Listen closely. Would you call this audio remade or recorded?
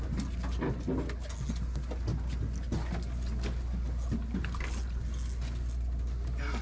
recorded